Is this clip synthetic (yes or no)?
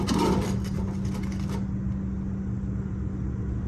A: no